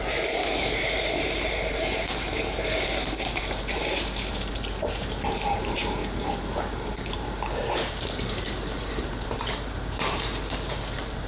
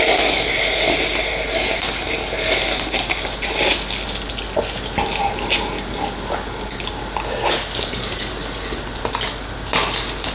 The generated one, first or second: first